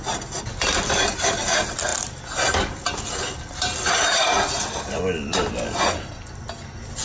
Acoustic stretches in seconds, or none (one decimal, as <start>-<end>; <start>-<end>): 0.0-7.0